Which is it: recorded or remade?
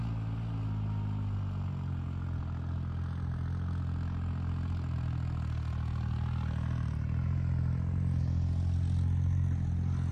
recorded